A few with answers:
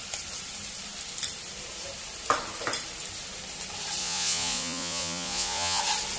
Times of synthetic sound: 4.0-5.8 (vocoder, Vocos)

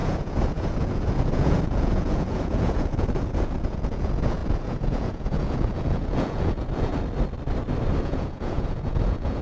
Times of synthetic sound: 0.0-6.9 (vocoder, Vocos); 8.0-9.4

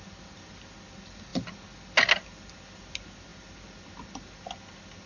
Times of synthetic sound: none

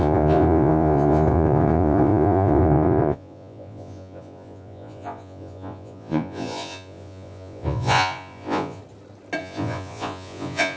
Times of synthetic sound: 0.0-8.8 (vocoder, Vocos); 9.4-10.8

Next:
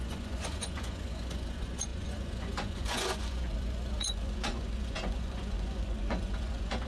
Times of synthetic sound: 0.0-6.9 (vocoder, Vocos)